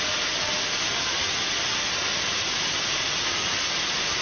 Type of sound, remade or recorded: recorded